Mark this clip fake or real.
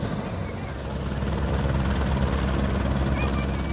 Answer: real